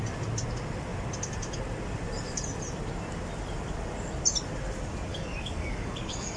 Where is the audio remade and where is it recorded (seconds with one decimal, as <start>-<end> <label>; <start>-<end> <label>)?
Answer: 0.0-5.1 recorded; 5.1-6.4 remade